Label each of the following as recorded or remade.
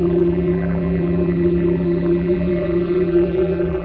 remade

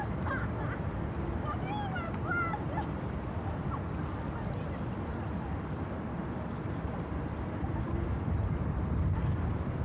remade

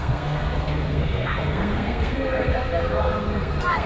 remade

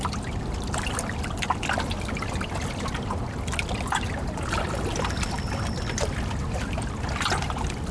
recorded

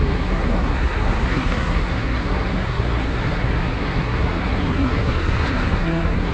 remade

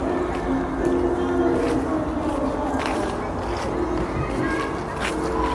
recorded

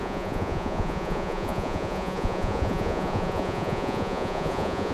remade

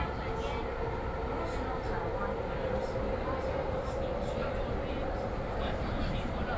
recorded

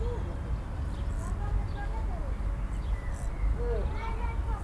recorded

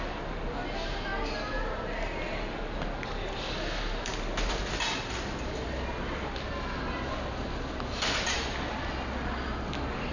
recorded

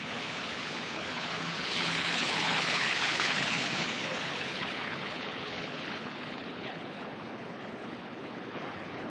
remade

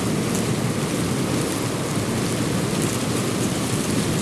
recorded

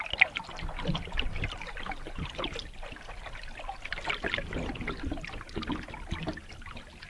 recorded